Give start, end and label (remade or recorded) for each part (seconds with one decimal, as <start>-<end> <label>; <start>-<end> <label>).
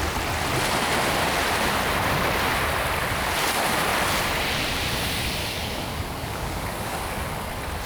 0.0-5.4 recorded; 5.4-7.5 remade; 7.5-7.9 recorded